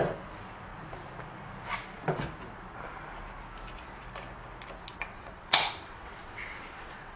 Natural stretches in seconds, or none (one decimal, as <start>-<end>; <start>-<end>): 0.0-4.9